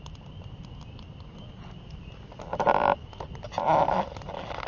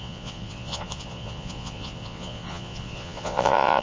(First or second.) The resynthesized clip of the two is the second